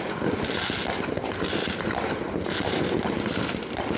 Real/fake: real